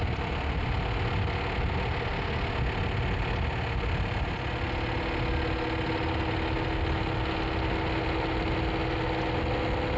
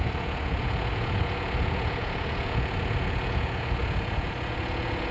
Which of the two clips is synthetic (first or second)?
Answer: second